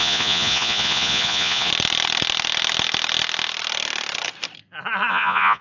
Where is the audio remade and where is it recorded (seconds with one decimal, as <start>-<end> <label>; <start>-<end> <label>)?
0.0-1.7 remade; 1.7-5.1 recorded; 5.1-5.6 remade